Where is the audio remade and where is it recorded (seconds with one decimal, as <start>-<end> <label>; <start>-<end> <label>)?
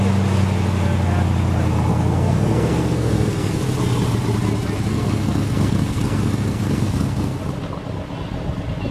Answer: 0.0-1.9 recorded; 1.9-3.6 remade; 3.6-4.9 recorded; 4.9-7.4 remade; 7.4-8.9 recorded